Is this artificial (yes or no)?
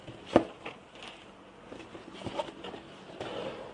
no